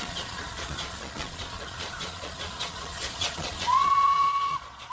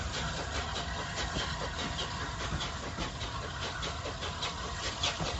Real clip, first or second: second